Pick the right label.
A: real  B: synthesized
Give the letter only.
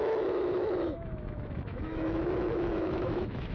B